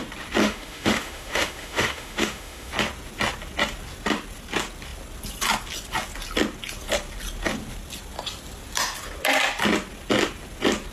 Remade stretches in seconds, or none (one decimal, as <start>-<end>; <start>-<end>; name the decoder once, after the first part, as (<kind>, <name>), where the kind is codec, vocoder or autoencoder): 0.4-2.7 (autoencoder, DAC-VAE)